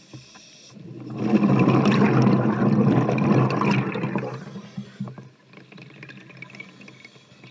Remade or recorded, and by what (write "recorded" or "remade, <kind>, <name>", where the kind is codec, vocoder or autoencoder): recorded